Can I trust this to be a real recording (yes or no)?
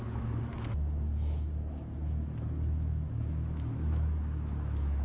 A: no